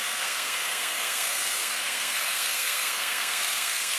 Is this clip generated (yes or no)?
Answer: yes